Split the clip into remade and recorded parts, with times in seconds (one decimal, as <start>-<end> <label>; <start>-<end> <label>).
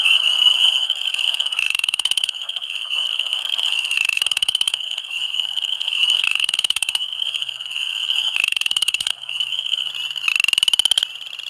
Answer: 0.0-9.9 remade; 9.9-11.5 recorded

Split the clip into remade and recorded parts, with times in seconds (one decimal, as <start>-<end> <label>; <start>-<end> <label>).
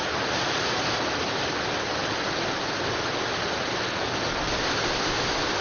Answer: 0.0-5.6 recorded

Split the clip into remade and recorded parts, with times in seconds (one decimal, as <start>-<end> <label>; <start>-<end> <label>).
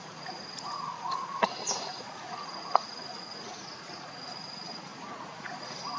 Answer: 0.0-6.0 remade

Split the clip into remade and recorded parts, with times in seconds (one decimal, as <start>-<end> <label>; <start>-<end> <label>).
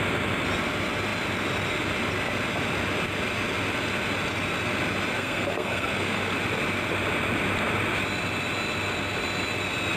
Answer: 0.0-5.1 recorded; 5.1-6.4 remade; 6.4-10.0 recorded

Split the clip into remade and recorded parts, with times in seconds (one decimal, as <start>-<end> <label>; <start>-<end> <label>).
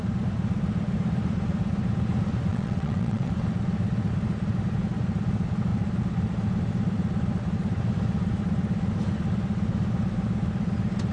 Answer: 0.0-2.5 recorded; 2.5-3.3 remade; 3.3-11.1 recorded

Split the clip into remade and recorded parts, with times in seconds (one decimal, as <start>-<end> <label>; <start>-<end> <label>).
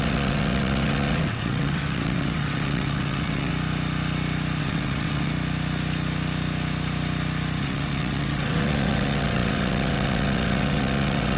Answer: 0.0-3.5 remade; 3.5-4.6 recorded; 4.6-5.3 remade; 5.3-7.6 recorded; 7.6-11.4 remade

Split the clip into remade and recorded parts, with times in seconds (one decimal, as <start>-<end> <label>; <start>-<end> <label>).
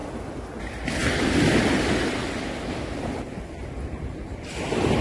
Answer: 0.0-5.0 recorded